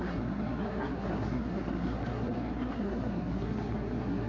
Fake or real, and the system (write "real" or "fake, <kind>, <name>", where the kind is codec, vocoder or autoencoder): fake, codec, SNAC